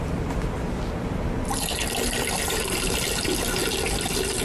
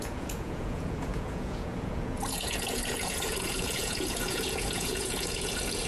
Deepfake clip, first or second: second